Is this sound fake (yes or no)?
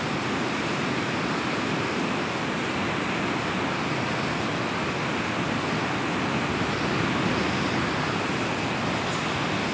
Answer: no